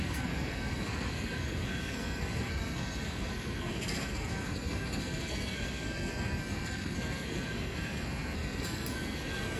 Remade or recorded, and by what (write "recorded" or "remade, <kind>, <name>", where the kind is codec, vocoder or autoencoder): remade, codec, SNAC